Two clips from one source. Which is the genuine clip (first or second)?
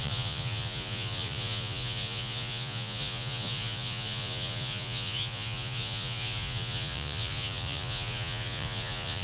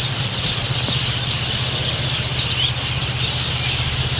second